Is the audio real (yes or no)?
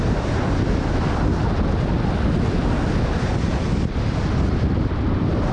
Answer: yes